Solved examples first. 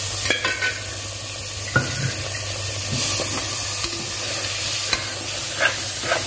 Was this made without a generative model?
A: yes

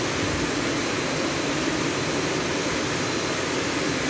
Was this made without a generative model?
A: yes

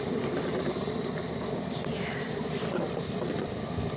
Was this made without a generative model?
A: yes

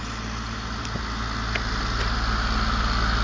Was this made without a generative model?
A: yes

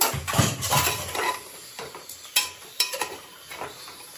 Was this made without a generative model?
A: no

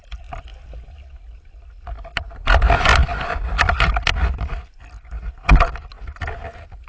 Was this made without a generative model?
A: yes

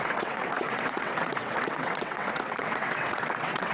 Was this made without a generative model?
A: no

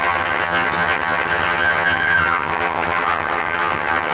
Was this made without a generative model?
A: no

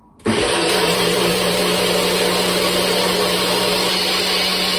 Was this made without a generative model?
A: yes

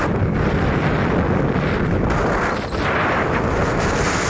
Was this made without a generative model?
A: yes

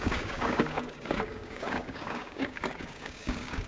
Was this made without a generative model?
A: no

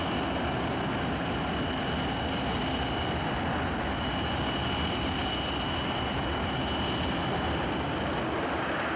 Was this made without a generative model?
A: yes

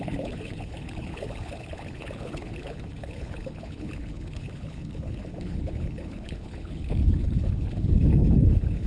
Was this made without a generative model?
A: no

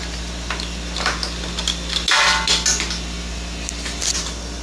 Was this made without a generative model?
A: yes